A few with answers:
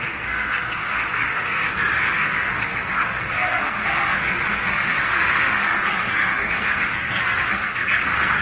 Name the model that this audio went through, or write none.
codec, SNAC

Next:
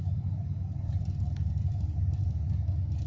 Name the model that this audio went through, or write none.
none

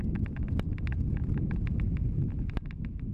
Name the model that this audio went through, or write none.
none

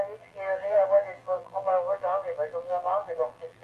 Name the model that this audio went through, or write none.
vocoder, BigVGAN v2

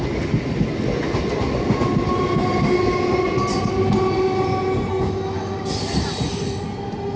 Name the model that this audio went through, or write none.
none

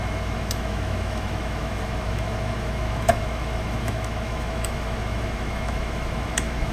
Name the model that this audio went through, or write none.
autoencoder, DAC-VAE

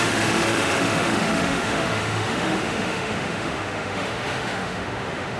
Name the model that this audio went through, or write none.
autoencoder, DAC-VAE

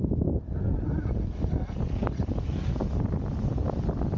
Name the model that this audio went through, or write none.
none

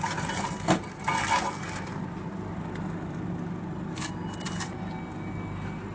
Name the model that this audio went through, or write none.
none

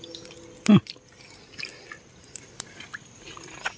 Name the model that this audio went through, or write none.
none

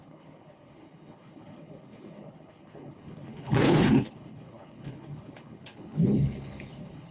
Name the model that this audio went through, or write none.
codec, HILCodec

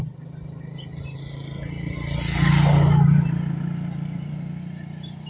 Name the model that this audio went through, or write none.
none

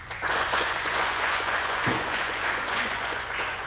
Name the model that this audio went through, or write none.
vocoder, Vocos